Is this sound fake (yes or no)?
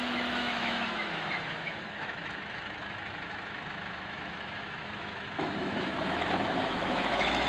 yes